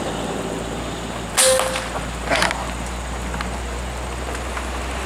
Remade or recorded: recorded